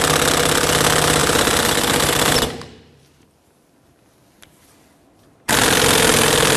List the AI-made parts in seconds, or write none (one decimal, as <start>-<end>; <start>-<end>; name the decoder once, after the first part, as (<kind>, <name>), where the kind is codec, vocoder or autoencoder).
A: 1.2-5.2 (vocoder, BigVGAN v2)